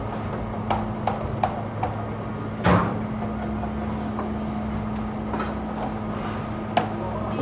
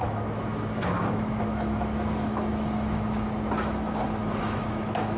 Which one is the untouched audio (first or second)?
first